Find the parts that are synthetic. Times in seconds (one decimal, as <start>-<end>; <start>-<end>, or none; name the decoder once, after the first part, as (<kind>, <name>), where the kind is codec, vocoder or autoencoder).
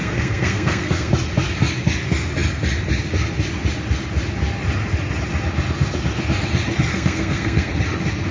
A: 0.0-1.1 (codec, SNAC); 6.9-7.7